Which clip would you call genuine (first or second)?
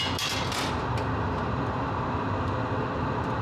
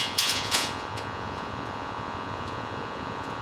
first